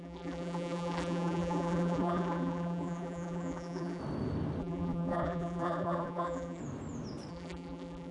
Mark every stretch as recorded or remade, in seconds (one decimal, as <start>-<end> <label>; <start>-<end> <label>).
0.0-4.0 remade; 4.0-4.6 recorded; 4.6-6.6 remade; 6.6-7.3 recorded; 7.3-8.1 remade